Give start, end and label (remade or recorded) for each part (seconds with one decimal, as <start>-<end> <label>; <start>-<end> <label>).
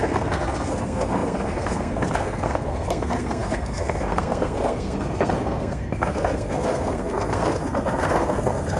0.0-8.8 remade